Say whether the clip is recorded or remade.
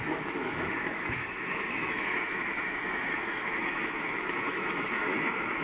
remade